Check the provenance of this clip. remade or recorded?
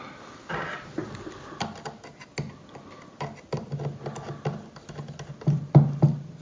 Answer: recorded